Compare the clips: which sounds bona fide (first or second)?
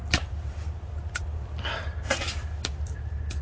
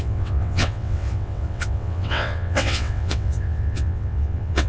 first